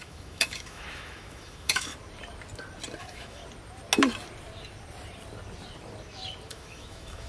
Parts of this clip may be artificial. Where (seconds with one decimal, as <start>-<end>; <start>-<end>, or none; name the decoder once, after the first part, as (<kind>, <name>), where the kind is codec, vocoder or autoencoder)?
0.0-1.9 (autoencoder, DAC-VAE); 3.0-3.4; 6.5-7.3